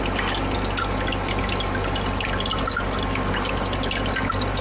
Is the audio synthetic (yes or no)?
no